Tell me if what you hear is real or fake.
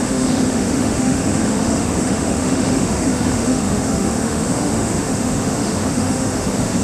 fake